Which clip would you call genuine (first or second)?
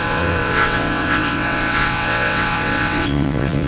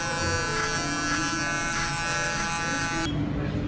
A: second